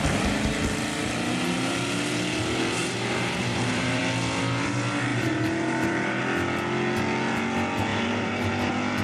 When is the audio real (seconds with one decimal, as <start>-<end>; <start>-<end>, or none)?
0.0-2.8; 4.0-5.1; 6.2-7.9; 8.5-9.0